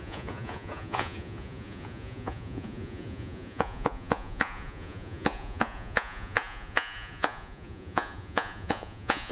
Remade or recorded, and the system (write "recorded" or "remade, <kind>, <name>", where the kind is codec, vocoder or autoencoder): remade, vocoder, Vocos